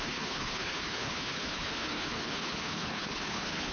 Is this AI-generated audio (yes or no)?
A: yes